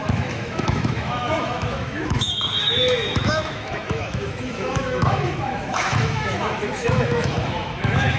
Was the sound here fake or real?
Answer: fake